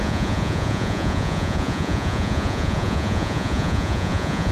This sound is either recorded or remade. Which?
remade